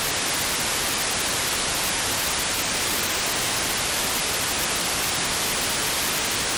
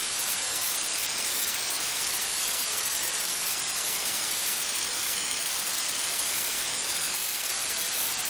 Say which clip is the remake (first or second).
second